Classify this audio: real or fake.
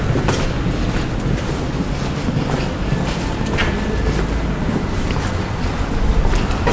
real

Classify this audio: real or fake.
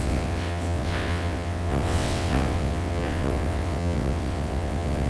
fake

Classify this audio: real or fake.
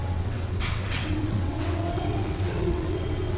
fake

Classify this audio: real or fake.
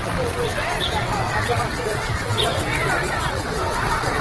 fake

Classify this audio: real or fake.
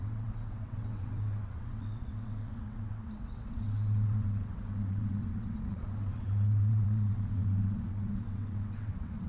fake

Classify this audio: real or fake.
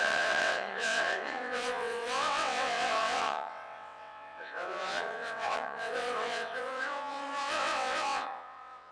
fake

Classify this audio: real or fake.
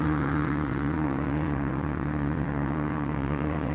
fake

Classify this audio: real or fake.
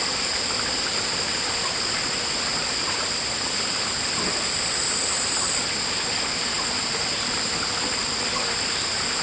real